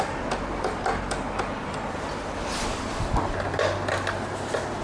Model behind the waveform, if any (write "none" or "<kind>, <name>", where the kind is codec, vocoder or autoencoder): none